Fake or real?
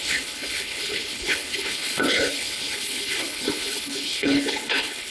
fake